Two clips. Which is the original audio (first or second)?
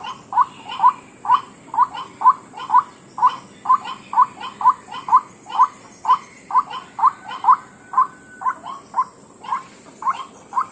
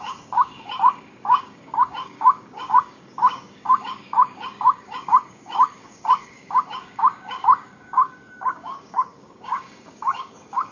first